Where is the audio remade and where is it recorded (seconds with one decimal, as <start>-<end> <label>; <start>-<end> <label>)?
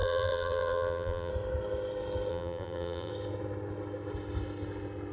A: 0.0-1.3 remade; 1.3-2.3 recorded; 2.3-3.1 remade; 3.1-5.1 recorded